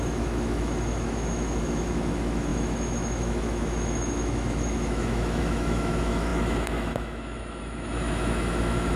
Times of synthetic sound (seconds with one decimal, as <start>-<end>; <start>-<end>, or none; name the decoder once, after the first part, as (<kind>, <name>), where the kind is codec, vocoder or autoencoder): 0.0-9.0 (autoencoder, DAC-VAE)